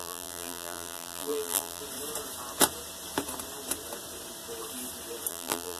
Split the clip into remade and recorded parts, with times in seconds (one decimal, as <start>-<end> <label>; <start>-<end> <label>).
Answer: 0.0-1.8 remade; 1.8-5.3 recorded; 5.3-5.8 remade

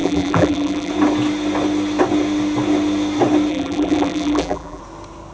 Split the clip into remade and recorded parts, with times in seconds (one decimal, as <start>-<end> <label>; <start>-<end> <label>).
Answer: 0.0-0.9 remade; 0.9-3.5 recorded; 3.5-4.8 remade; 4.8-5.3 recorded

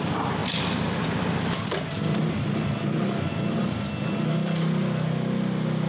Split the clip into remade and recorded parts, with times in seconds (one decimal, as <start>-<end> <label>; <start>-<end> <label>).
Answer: 0.0-5.9 recorded

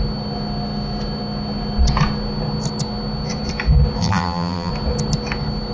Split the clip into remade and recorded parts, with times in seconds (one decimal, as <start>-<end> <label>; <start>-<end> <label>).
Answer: 0.0-4.0 recorded; 4.0-4.7 remade; 4.7-5.7 recorded

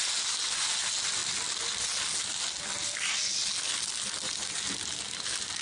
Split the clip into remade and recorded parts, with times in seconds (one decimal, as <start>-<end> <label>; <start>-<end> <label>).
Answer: 0.0-5.6 recorded

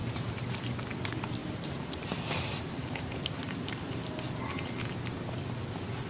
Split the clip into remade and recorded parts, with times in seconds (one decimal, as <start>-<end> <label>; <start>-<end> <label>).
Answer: 0.0-0.5 remade; 0.5-1.4 recorded; 1.4-4.0 remade; 4.0-6.1 recorded

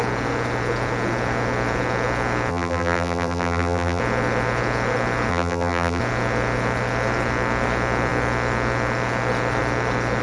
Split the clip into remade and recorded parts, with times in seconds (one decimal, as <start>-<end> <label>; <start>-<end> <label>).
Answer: 0.0-2.5 recorded; 2.5-4.0 remade; 4.0-5.3 recorded; 5.3-6.0 remade; 6.0-10.2 recorded

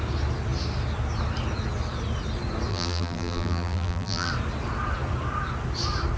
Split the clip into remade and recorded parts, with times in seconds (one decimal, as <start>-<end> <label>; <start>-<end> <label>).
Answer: 0.0-2.7 recorded; 2.7-4.3 remade; 4.3-6.2 recorded